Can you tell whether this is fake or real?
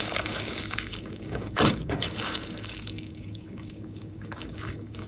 fake